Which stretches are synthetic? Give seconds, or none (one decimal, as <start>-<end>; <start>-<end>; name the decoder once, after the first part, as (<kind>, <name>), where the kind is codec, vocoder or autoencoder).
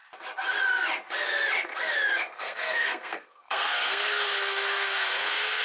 2.1-5.6 (codec, SNAC)